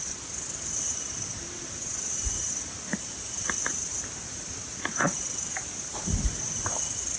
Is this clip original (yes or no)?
yes